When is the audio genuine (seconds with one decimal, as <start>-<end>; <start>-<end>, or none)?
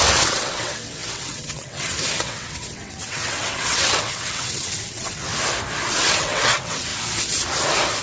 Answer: 5.3-5.9; 6.9-8.0